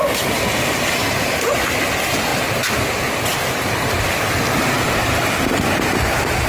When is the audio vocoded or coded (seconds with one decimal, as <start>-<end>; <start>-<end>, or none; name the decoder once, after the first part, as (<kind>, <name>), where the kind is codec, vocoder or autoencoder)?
none